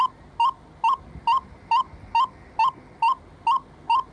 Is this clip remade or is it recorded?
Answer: recorded